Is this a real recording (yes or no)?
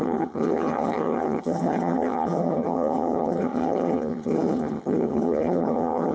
no